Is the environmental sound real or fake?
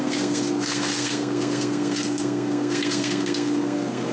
fake